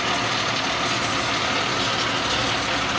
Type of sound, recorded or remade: recorded